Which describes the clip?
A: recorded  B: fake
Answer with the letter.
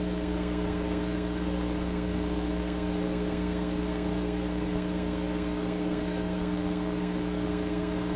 B